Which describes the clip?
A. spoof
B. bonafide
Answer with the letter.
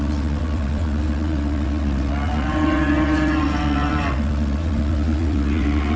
A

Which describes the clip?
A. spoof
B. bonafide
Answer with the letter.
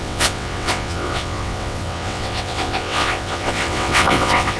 A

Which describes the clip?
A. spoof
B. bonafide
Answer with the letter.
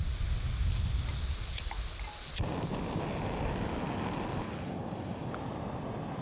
B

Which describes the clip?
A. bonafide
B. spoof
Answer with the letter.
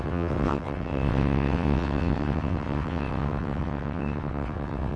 B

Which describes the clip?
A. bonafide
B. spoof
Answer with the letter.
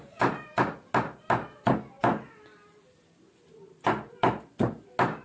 A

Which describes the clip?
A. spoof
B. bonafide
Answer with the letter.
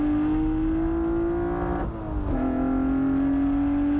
B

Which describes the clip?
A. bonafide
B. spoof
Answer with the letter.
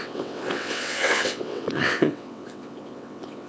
B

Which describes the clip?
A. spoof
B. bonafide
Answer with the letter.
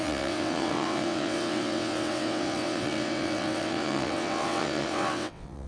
A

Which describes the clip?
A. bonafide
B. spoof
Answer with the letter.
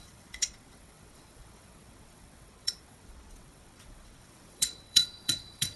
B